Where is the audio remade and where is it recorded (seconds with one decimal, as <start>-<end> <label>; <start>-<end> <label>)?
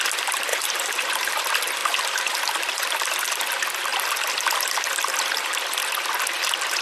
0.0-0.5 recorded; 0.5-1.3 remade; 1.3-1.8 recorded; 1.8-2.3 remade; 2.3-6.8 recorded